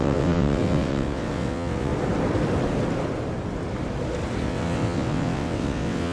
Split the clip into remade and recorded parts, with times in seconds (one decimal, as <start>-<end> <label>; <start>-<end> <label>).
0.0-1.9 remade; 1.9-4.4 recorded; 4.4-6.1 remade